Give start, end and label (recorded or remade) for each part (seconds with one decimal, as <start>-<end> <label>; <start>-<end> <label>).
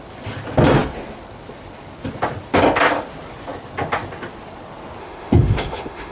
0.0-5.0 recorded; 5.0-6.1 remade